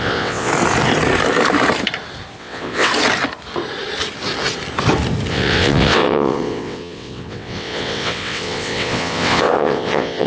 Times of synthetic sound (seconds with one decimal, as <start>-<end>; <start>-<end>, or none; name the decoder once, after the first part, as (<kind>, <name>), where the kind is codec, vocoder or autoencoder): 0.0-0.5 (vocoder, WaveNeXt); 2.4-2.9; 5.3-10.3